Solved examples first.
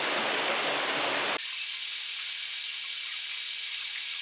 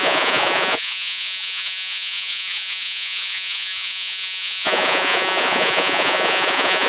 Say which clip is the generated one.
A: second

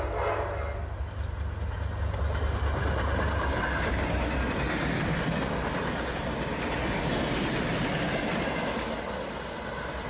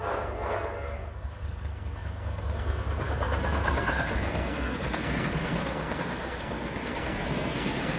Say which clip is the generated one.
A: second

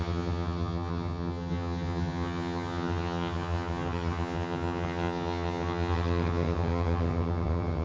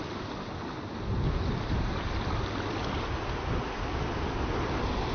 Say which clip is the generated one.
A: first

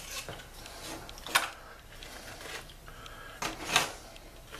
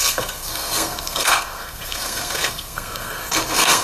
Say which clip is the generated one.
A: second